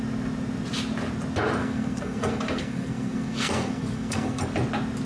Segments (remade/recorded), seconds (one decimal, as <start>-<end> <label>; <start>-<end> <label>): 0.0-1.6 recorded; 1.6-4.4 remade; 4.4-5.1 recorded

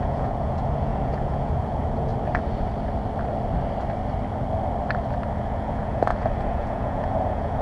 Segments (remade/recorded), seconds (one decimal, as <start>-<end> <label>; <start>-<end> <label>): 0.0-2.1 remade; 2.1-5.4 recorded; 5.4-7.6 remade